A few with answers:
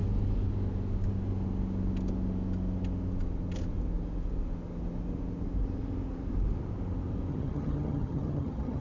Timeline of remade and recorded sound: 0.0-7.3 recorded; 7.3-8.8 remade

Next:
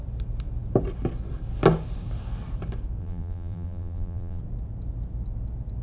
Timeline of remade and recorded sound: 0.0-3.0 recorded; 3.0-4.4 remade; 4.4-5.8 recorded